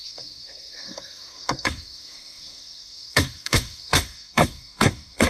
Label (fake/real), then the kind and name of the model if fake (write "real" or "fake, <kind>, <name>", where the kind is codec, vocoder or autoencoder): fake, codec, SNAC